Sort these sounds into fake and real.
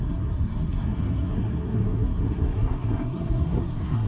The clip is fake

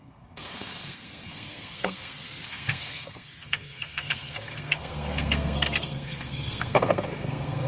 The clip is fake